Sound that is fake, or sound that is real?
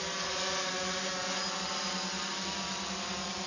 real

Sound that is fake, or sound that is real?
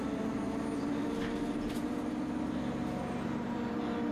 real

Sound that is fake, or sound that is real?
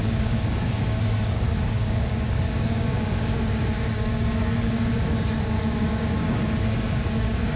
fake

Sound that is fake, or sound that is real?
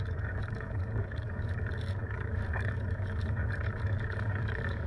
fake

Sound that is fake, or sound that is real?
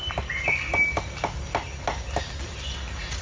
real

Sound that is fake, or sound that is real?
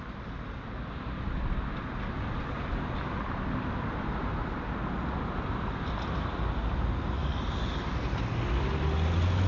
real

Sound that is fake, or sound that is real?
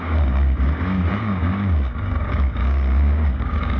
fake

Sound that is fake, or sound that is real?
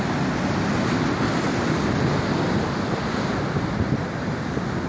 real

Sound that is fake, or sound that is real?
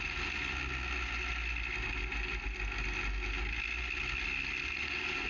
real